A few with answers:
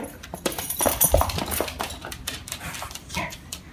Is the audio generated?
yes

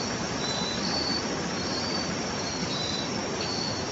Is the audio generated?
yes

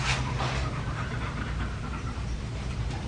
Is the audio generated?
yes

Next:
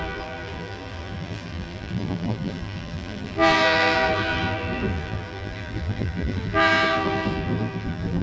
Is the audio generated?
yes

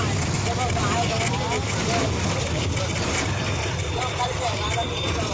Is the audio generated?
no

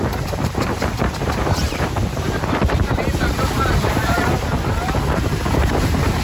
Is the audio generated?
yes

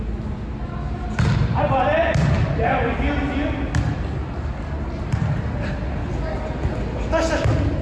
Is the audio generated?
no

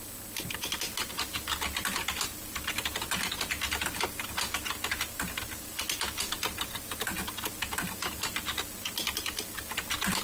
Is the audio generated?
no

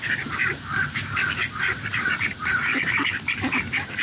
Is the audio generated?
yes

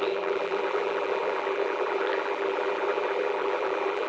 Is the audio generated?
yes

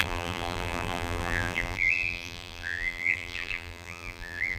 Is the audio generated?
yes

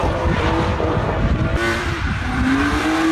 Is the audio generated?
yes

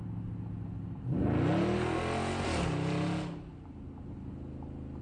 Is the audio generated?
no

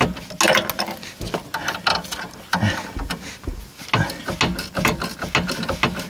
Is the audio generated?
no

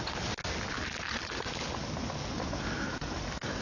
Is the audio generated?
no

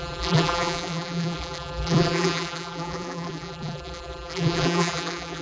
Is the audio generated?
yes